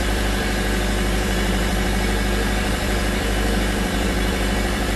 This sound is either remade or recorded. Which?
remade